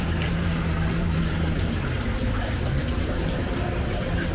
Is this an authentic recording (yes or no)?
no